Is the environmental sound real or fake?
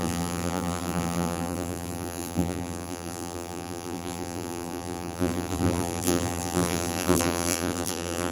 fake